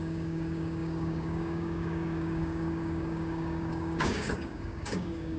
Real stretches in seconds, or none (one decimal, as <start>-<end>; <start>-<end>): none